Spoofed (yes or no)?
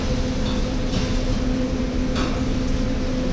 no